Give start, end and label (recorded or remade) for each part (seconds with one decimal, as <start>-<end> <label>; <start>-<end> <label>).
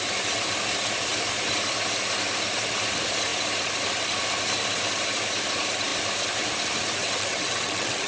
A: 0.0-7.0 recorded; 7.0-8.1 remade